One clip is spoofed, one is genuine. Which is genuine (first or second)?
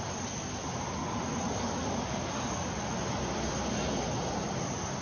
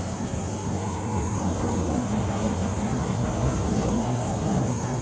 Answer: first